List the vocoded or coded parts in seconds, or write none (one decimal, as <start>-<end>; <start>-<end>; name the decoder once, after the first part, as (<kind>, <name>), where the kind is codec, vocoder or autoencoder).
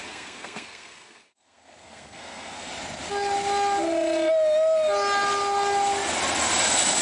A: 0.0-2.7 (codec, SNAC)